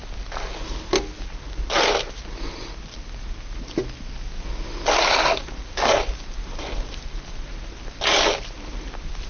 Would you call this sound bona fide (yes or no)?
yes